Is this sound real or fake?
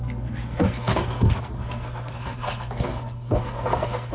fake